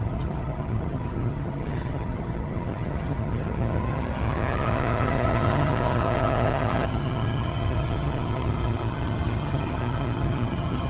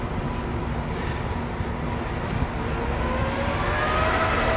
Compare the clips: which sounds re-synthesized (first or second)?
first